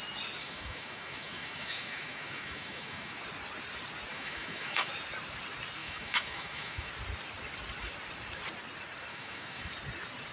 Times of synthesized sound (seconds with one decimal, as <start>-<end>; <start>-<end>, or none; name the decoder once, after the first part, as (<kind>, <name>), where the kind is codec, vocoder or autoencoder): 0.4-3.2 (autoencoder, DAC-VAE); 4.1-4.9; 5.8-6.9; 9.1-9.7